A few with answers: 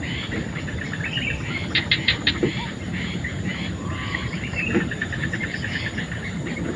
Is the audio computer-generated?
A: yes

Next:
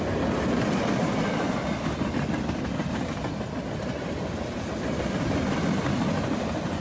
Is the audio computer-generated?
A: no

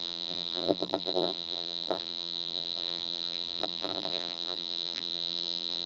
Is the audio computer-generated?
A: yes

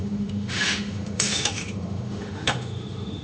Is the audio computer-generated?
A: yes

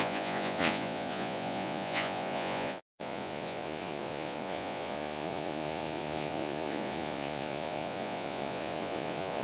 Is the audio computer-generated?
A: yes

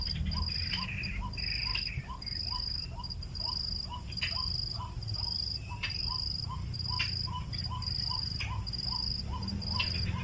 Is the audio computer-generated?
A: no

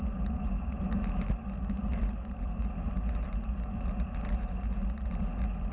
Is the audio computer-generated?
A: no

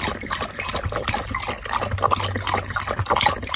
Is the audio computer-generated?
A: no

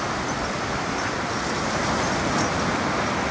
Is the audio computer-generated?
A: no